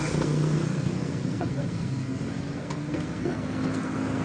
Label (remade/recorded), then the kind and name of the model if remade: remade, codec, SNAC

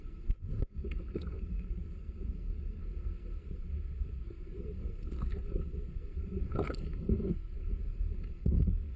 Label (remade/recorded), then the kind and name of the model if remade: remade, codec, SNAC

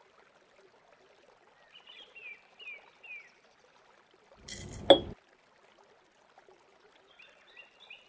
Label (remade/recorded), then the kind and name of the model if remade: recorded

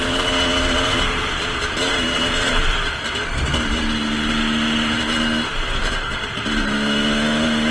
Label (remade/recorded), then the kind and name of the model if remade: recorded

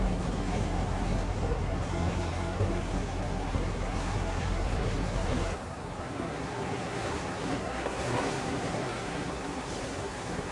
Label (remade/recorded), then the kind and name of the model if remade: remade, codec, SNAC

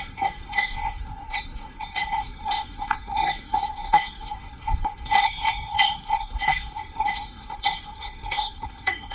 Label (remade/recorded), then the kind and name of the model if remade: remade, codec, SNAC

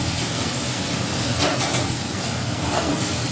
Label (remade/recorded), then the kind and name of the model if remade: remade, codec, SNAC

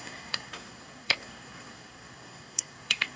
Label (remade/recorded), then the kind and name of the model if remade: remade, codec, SNAC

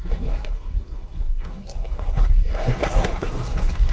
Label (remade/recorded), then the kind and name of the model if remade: remade, codec, SNAC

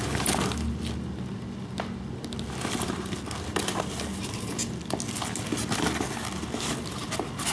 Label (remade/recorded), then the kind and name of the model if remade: recorded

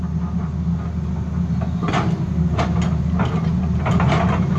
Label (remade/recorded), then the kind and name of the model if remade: recorded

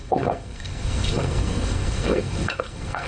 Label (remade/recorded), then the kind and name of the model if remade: remade, codec, SNAC